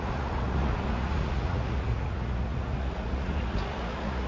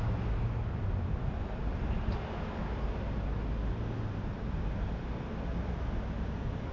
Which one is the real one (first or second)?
second